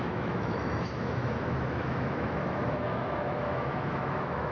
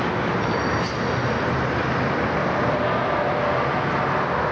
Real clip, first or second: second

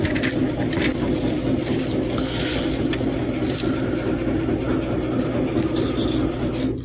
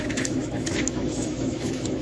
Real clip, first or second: first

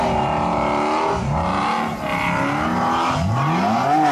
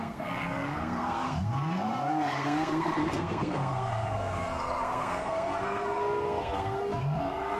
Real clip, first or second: first